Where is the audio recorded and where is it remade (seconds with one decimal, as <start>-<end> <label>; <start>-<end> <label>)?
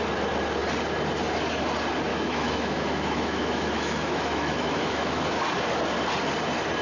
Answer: 0.0-2.1 recorded; 2.1-5.2 remade; 5.2-6.8 recorded